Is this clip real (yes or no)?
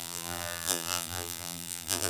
no